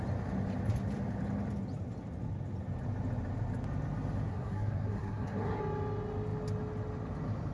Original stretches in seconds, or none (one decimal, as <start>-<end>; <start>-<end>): 0.0-4.3; 5.6-7.5